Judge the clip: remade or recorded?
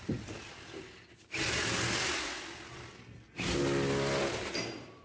recorded